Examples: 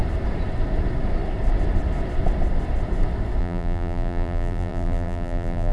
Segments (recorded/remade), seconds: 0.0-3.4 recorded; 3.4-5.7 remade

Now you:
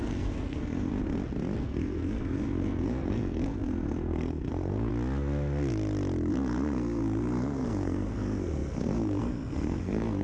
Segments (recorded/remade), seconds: 0.0-0.9 remade; 0.9-1.6 recorded; 1.6-4.9 remade; 4.9-6.3 recorded; 6.3-10.2 remade

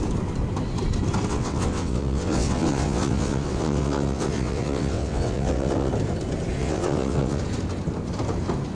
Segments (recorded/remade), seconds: 0.0-1.3 recorded; 1.3-5.9 remade; 5.9-6.6 recorded; 6.6-7.4 remade; 7.4-8.7 recorded

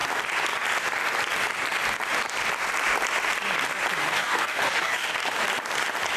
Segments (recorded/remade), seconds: 0.0-4.0 recorded; 4.0-5.1 remade; 5.1-6.2 recorded

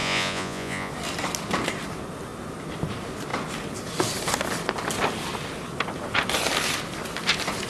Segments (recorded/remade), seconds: 0.0-0.9 remade; 0.9-7.7 recorded

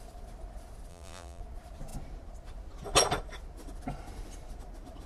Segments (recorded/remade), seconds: 0.0-0.9 recorded; 0.9-1.4 remade; 1.4-5.1 recorded

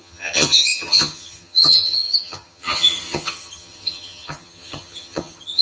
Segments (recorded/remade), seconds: 0.0-5.6 remade